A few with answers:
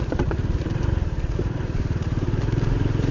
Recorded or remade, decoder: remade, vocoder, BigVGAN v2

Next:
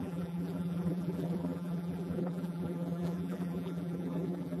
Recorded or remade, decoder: remade, vocoder, BigVGAN v2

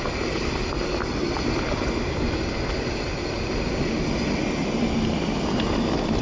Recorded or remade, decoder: recorded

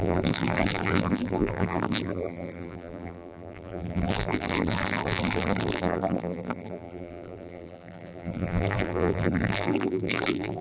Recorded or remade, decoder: remade, vocoder, BigVGAN v2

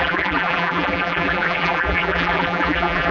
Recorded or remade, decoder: remade, vocoder, BigVGAN v2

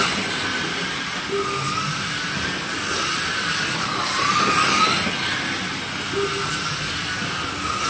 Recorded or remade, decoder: recorded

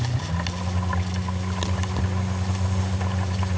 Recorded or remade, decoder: recorded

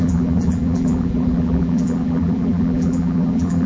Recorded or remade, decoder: remade, vocoder, BigVGAN v2